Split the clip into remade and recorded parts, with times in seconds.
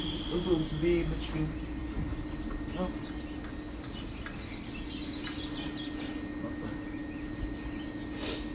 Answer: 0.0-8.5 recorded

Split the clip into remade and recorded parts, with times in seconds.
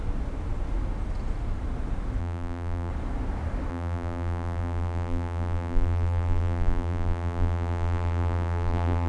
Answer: 0.0-2.2 recorded; 2.2-2.9 remade; 2.9-3.7 recorded; 3.7-9.1 remade